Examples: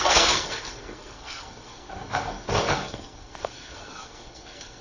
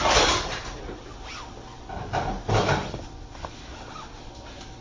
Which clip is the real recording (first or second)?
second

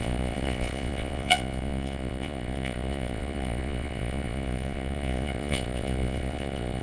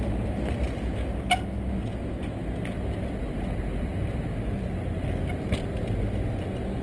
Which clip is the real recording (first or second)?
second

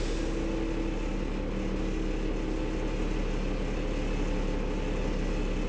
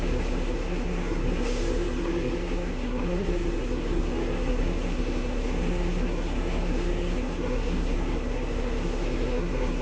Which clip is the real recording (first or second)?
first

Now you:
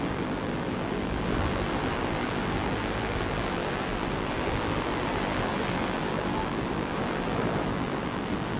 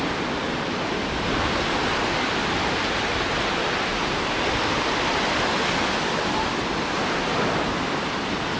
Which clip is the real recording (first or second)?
second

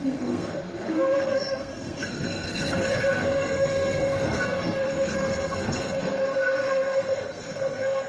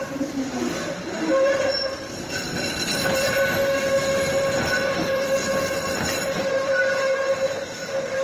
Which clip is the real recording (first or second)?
second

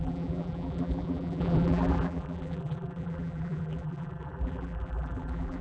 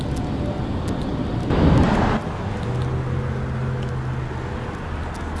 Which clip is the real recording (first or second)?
second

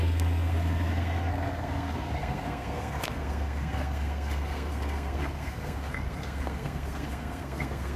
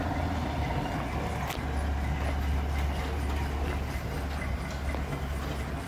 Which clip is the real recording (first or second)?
second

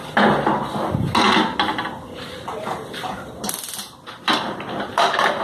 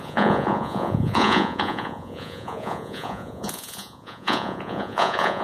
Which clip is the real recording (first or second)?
first